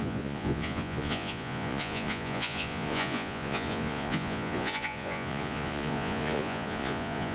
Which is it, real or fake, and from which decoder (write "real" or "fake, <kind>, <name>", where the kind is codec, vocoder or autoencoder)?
fake, vocoder, Vocos